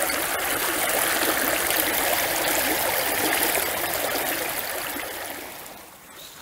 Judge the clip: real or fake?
real